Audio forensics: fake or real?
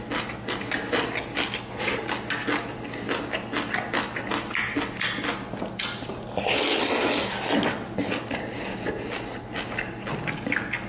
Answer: real